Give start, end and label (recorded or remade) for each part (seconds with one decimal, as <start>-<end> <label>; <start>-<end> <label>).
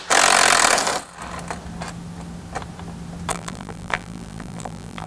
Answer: 0.0-3.3 recorded; 3.3-5.1 remade